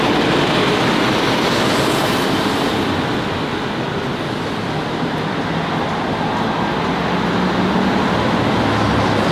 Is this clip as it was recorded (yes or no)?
yes